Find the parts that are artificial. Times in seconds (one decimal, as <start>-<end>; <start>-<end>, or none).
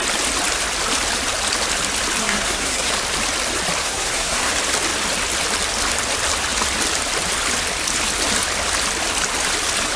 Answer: 2.2-2.9; 3.8-4.5